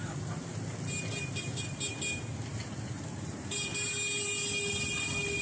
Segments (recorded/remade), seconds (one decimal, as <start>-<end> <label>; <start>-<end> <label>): 0.0-5.4 recorded